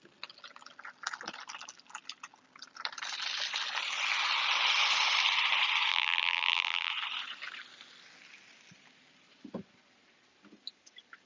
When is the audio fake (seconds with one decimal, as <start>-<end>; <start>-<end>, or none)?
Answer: 5.9-6.9